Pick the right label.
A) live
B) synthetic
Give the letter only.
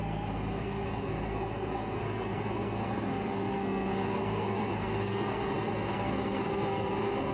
B